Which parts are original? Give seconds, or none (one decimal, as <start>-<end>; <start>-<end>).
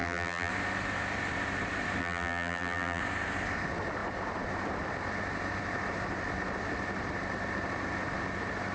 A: 0.5-2.0; 3.0-8.7